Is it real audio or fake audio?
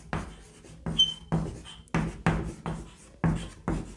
real